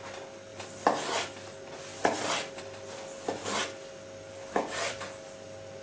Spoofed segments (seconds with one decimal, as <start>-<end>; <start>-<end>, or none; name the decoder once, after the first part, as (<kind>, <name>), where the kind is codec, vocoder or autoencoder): 0.5-2.6 (vocoder, BigVGAN v2)